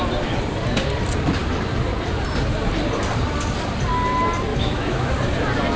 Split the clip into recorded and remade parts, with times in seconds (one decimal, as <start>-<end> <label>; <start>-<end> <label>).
0.0-4.5 recorded; 4.5-5.1 remade; 5.1-5.8 recorded